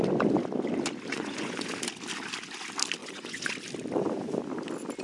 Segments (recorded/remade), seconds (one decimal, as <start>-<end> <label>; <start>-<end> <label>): 0.0-1.1 recorded; 1.1-1.7 remade; 1.7-3.0 recorded; 3.0-3.5 remade; 3.5-5.0 recorded